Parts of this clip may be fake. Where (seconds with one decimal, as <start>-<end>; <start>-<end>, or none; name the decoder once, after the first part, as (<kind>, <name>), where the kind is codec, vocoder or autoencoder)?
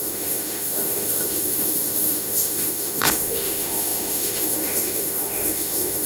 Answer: 0.0-6.1 (autoencoder, DAC-VAE)